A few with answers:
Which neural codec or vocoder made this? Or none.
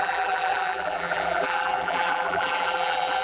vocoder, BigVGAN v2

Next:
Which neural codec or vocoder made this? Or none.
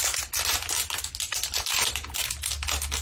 none